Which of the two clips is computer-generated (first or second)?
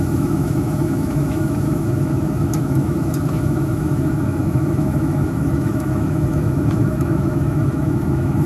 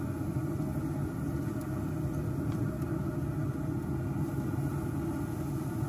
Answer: first